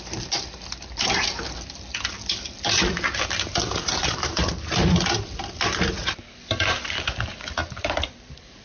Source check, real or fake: fake